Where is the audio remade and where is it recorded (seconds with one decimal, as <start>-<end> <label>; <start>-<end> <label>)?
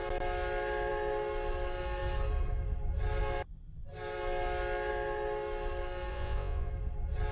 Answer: 0.0-6.1 recorded; 6.1-6.7 remade; 6.7-7.3 recorded